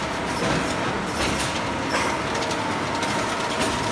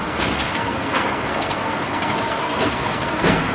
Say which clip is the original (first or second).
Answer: first